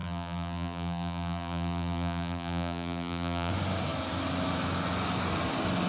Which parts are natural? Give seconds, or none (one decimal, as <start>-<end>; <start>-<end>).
3.5-5.9